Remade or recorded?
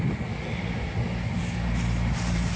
recorded